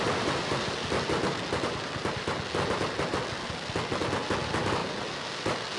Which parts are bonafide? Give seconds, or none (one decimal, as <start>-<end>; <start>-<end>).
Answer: 0.0-5.8